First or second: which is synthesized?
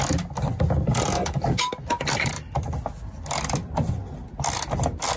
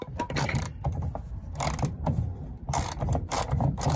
second